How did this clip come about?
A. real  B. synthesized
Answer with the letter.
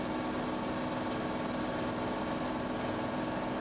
A